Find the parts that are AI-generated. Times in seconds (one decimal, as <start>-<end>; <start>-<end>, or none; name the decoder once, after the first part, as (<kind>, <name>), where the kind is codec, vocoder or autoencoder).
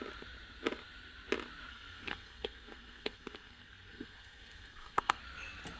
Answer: 1.7-5.2 (codec, SNAC)